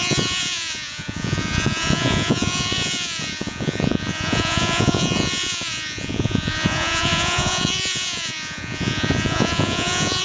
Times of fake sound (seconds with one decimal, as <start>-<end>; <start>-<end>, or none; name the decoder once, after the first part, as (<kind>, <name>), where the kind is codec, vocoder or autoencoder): 0.0-10.2 (vocoder, Vocos)